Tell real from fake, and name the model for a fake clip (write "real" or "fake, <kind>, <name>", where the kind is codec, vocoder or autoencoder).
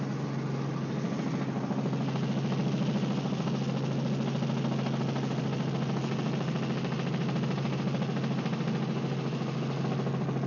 real